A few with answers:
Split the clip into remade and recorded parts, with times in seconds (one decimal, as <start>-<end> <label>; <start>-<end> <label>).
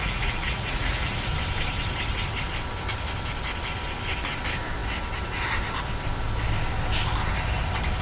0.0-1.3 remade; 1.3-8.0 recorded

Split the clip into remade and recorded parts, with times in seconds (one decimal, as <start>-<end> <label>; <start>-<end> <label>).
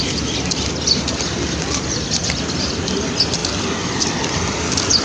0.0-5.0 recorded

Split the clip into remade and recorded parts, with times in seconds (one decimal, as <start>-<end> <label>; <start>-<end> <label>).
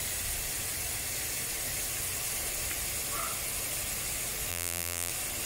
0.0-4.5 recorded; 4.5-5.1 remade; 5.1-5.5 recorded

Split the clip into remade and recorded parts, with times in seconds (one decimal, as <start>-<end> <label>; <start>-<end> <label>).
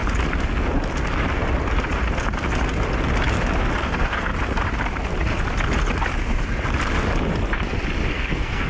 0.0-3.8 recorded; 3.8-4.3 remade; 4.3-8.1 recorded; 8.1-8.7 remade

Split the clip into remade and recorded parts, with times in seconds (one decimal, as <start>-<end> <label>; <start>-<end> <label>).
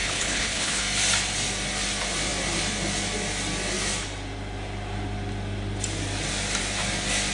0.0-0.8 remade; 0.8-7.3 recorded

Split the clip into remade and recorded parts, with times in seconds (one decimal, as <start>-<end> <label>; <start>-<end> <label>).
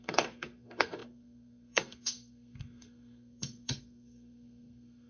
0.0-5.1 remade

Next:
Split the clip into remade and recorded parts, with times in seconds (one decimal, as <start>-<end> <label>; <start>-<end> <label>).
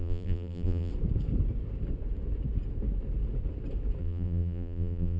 0.0-0.9 remade; 0.9-4.0 recorded; 4.0-5.2 remade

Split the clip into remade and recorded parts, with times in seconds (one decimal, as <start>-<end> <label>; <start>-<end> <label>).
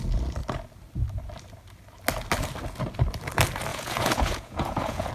0.0-3.7 recorded; 3.7-5.1 remade